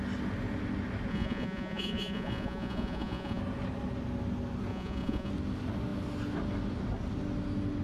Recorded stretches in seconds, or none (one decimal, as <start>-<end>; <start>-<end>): 0.0-1.1; 3.4-4.7; 5.3-7.8